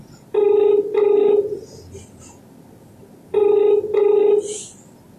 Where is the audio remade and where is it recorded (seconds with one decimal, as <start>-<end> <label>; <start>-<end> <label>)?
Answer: 0.0-5.2 recorded